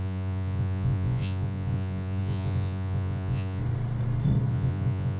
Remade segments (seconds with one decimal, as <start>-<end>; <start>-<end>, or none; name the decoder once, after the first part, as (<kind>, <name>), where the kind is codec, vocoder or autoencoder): 0.0-3.6 (vocoder, Vocos); 4.5-5.2